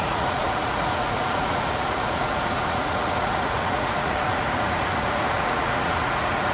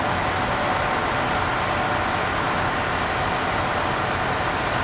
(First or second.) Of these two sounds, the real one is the second